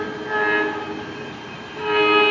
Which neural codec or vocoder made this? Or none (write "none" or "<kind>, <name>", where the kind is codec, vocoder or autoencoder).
none